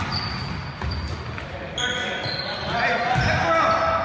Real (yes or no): yes